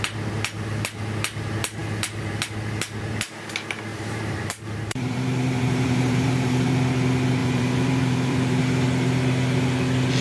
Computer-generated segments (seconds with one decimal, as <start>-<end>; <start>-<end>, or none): 3.9-6.7; 7.4-8.6